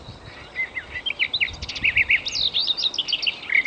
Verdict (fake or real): real